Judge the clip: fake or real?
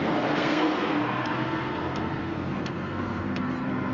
fake